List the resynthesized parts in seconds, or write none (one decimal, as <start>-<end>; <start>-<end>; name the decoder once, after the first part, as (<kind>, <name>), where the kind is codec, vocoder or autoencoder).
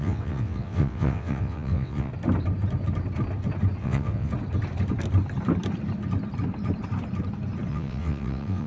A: 0.0-2.1 (vocoder, WaveNeXt); 3.8-4.3; 7.7-8.7